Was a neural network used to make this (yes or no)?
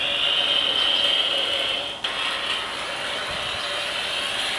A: no